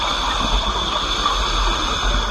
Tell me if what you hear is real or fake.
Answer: real